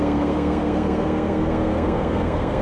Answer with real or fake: fake